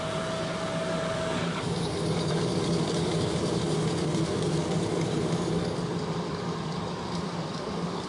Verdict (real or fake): fake